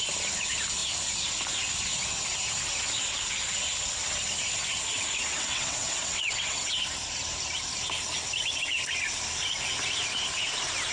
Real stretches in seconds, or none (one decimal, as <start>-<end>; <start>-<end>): 0.0-5.3; 6.7-10.9